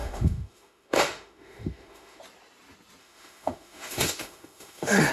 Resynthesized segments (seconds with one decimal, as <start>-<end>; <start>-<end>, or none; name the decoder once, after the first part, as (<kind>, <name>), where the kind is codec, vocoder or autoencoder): 0.0-2.2 (autoencoder, DAC-VAE); 3.0-5.1